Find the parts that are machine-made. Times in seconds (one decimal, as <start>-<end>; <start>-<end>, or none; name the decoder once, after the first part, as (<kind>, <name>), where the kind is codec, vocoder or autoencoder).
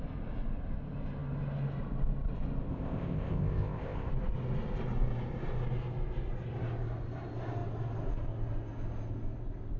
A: 2.7-4.1 (codec, ZipCodec)